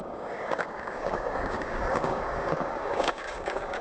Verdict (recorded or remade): remade